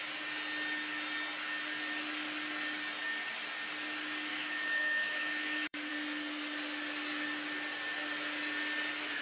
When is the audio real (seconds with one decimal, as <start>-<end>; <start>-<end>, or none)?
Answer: 0.0-4.3; 5.9-9.2

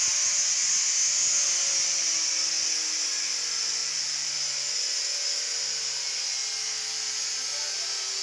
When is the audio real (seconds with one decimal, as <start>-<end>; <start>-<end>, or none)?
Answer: 0.0-3.8; 4.3-8.2

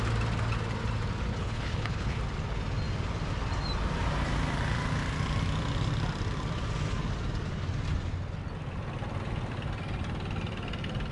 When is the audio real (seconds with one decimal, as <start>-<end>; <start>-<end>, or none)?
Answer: 0.0-1.3; 2.2-11.1

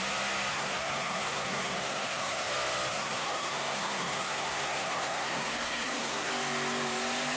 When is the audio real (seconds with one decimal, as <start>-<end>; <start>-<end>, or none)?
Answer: 0.0-0.5; 2.5-2.9; 6.3-7.4

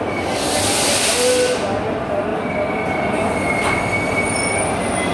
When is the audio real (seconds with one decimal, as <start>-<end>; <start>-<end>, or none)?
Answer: 0.0-5.1

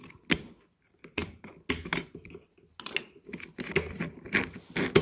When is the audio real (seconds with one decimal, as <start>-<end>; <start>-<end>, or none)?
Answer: 0.0-5.0

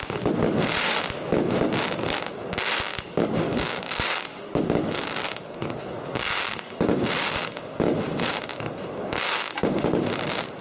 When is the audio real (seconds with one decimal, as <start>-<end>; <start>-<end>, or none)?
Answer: 0.0-2.9; 6.8-10.6

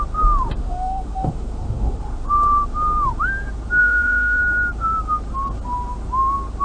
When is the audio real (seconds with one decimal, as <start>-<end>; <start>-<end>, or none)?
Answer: 0.0-0.6; 2.0-3.8; 4.4-6.6